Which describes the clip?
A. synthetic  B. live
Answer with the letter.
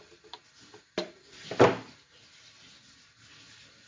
B